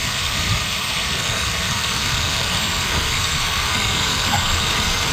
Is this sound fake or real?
fake